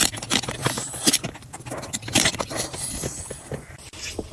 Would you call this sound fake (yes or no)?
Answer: yes